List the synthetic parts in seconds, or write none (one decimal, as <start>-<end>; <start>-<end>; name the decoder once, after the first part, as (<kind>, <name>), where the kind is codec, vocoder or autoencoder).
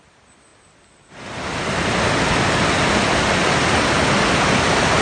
none